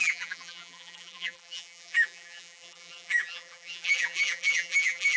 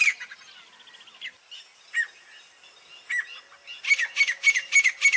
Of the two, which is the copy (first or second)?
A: first